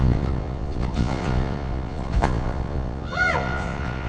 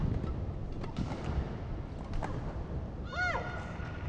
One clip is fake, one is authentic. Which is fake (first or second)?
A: first